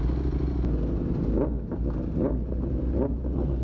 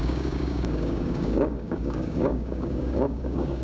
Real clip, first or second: first